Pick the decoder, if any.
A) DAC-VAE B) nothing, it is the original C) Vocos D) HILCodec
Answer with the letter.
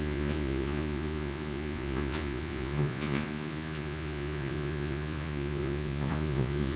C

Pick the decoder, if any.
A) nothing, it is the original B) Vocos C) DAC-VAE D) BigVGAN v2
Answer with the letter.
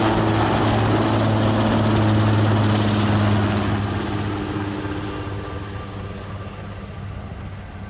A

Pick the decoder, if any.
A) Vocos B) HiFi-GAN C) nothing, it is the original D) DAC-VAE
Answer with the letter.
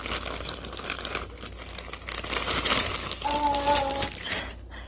C